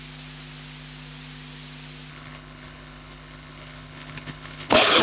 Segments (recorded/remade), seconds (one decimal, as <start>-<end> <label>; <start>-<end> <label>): 0.0-2.1 recorded; 2.1-5.0 remade